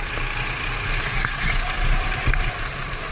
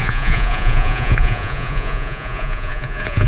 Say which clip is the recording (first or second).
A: first